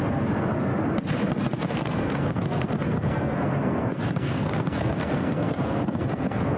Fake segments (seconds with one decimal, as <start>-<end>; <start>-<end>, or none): 0.0-0.7; 1.7-6.6